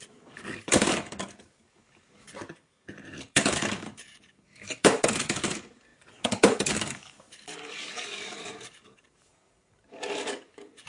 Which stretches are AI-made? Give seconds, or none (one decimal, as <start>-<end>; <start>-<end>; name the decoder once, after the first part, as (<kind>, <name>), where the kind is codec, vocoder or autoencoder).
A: 0.0-10.9 (codec, DAC)